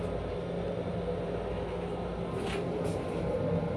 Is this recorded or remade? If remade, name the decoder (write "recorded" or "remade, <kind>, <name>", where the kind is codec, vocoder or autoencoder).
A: recorded